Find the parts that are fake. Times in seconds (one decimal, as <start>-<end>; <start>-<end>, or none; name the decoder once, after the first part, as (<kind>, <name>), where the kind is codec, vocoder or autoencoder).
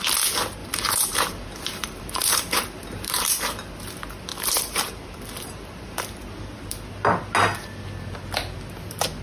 0.6-3.3 (vocoder, BigVGAN v2); 4.3-6.2